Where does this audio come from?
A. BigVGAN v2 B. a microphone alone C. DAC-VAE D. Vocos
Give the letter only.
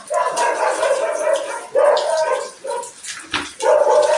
B